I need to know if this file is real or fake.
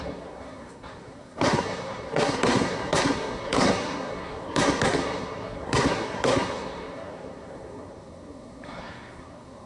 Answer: fake